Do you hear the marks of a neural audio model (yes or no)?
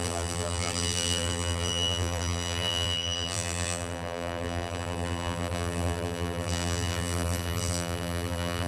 yes